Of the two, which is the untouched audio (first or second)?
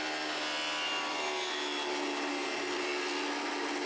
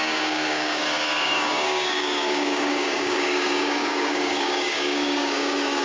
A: first